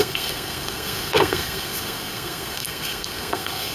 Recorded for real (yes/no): no